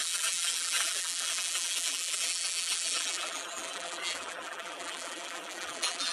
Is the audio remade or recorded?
remade